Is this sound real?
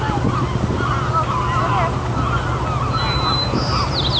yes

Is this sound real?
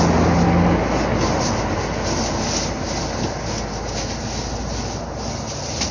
yes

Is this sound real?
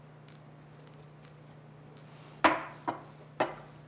yes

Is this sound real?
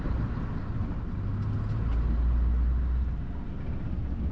yes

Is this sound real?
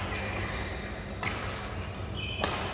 yes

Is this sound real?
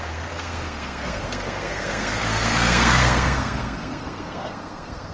no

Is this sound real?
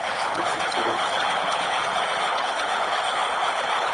no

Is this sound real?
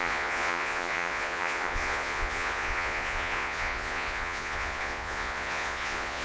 no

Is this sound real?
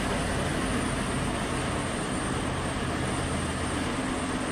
yes